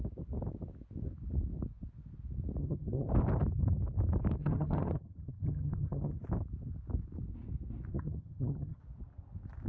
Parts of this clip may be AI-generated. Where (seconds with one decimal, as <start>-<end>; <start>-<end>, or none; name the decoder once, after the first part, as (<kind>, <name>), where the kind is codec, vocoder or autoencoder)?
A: 2.6-3.1 (vocoder, HiFi-GAN); 4.4-6.2; 7.9-8.8